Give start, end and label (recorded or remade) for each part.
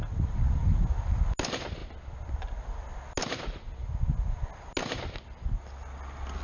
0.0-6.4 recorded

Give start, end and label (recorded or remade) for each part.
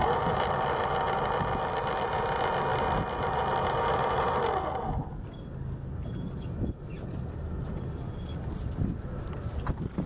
0.0-10.1 recorded